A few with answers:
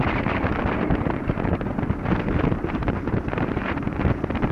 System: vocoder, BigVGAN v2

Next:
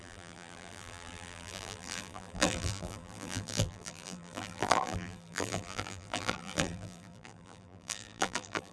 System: vocoder, BigVGAN v2